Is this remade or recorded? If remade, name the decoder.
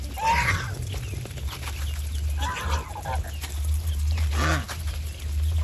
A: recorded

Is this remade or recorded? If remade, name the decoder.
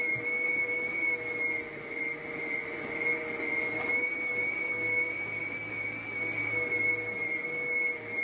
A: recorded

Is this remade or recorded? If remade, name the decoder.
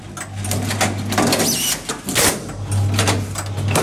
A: recorded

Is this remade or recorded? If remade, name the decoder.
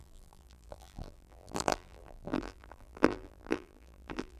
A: remade, vocoder, BigVGAN v2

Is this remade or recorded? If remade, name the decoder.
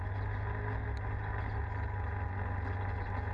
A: recorded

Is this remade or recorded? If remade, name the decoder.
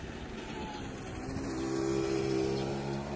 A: recorded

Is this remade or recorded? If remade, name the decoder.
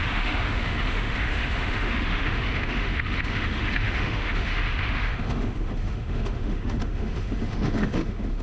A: remade, autoencoder, DAC-VAE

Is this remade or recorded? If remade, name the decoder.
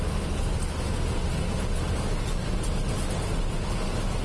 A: recorded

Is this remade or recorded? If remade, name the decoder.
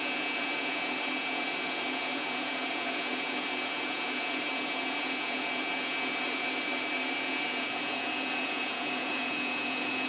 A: remade, vocoder, Vocos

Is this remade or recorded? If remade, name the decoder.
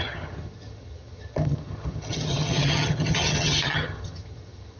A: remade, vocoder, HiFi-GAN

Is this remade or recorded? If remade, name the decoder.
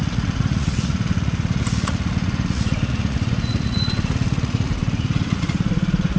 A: remade, vocoder, Vocos